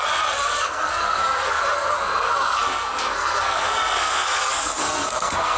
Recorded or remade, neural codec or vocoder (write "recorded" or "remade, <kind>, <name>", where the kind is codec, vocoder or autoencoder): remade, codec, SNAC